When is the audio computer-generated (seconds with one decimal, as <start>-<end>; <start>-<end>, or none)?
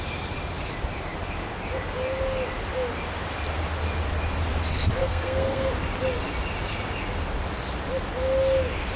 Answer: 5.0-5.7